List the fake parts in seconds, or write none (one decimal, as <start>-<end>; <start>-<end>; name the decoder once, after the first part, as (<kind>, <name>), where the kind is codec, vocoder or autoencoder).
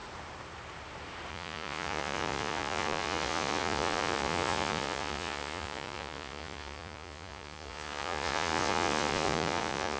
1.3-10.0 (vocoder, Vocos)